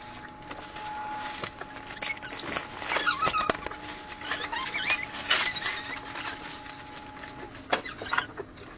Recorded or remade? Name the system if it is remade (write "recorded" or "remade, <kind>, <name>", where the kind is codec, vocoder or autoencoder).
recorded